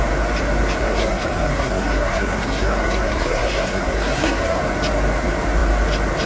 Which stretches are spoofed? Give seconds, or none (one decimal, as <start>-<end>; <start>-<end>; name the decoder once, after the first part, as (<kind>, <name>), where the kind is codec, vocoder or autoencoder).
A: 0.8-4.6 (codec, SNAC)